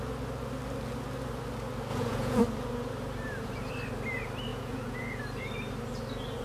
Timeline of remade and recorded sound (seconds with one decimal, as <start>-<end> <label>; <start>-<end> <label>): 0.0-1.9 recorded; 1.9-2.4 remade; 2.4-4.5 recorded; 4.5-5.2 remade; 5.2-6.4 recorded